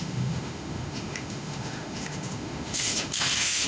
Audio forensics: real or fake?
fake